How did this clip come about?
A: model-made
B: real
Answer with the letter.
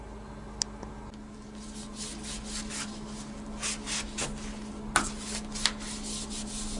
B